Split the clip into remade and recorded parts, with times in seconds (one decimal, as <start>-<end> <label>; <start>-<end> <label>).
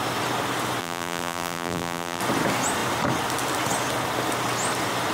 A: 0.0-0.8 recorded; 0.8-2.2 remade; 2.2-5.1 recorded